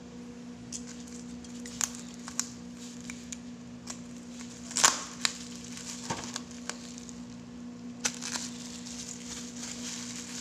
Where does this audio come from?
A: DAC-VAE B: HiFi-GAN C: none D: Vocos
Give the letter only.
C